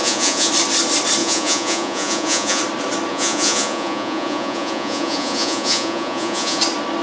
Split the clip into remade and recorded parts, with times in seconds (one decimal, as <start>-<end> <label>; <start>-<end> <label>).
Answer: 0.0-0.5 remade; 0.5-1.2 recorded; 1.2-2.6 remade; 2.6-3.1 recorded; 3.1-6.6 remade; 6.6-7.0 recorded